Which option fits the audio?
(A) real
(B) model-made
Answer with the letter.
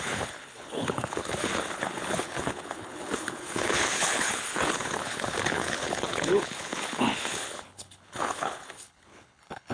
B